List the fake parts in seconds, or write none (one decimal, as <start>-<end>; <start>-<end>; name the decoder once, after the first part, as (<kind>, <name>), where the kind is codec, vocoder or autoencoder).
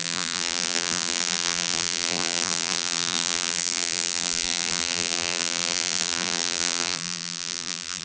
0.0-8.0 (vocoder, BigVGAN v2)